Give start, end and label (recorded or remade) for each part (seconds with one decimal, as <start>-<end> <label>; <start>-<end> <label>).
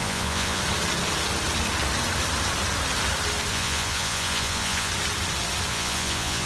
0.0-0.6 remade; 0.6-3.5 recorded; 3.5-4.9 remade; 4.9-5.7 recorded; 5.7-6.5 remade